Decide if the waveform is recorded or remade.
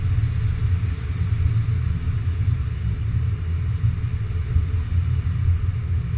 recorded